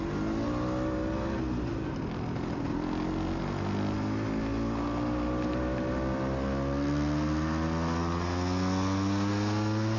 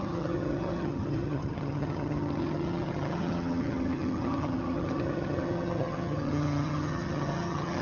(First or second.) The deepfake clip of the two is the second